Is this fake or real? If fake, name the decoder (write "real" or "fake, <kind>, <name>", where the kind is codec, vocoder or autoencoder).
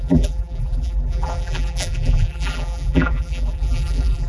fake, vocoder, BigVGAN v2